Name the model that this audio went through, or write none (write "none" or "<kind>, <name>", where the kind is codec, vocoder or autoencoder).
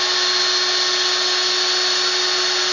none